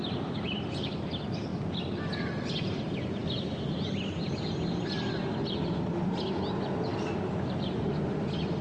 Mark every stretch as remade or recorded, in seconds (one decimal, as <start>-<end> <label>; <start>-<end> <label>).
0.0-8.6 recorded